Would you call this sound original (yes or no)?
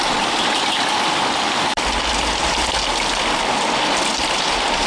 yes